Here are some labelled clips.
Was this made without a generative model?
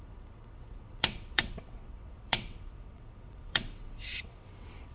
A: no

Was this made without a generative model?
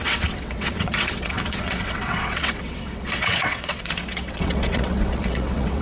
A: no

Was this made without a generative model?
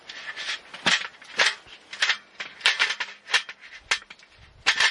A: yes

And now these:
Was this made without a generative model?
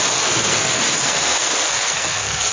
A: no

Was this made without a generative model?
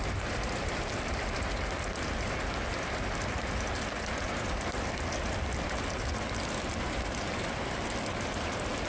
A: yes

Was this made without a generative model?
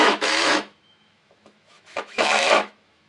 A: no